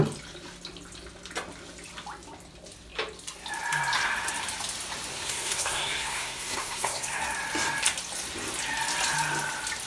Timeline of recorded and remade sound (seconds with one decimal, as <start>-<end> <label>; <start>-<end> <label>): 0.0-5.1 recorded; 5.1-7.2 remade; 7.2-9.9 recorded